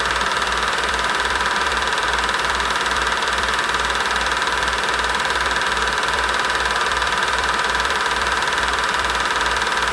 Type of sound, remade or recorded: remade